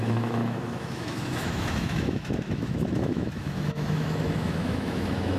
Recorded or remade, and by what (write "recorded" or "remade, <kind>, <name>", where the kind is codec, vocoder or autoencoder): remade, autoencoder, DAC-VAE